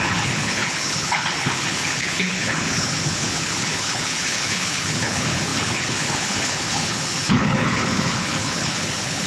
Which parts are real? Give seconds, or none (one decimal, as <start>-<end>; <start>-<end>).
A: none